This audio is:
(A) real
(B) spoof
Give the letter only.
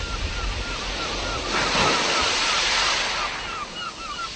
A